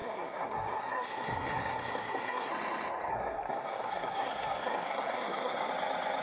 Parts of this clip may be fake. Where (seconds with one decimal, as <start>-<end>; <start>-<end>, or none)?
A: 0.0-2.5; 3.1-5.7